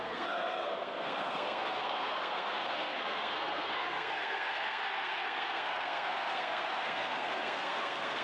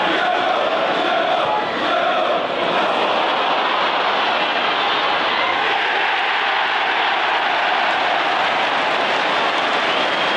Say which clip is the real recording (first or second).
second